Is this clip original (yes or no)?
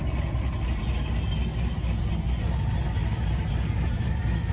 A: yes